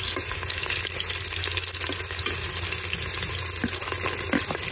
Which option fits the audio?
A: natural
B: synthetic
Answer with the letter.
A